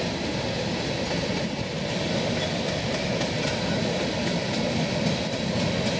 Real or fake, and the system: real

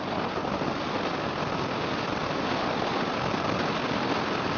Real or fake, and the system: real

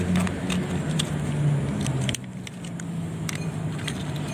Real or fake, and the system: fake, vocoder, BigVGAN v2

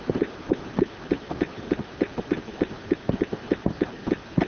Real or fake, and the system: fake, vocoder, BigVGAN v2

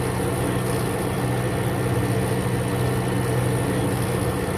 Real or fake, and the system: real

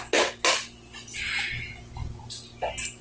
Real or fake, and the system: real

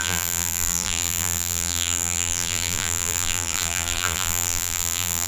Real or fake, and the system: fake, vocoder, BigVGAN v2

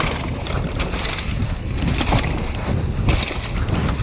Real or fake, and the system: fake, vocoder, BigVGAN v2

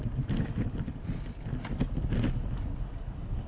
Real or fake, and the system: real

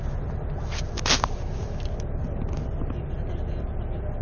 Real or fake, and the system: real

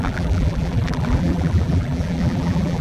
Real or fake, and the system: fake, vocoder, BigVGAN v2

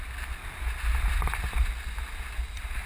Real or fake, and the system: real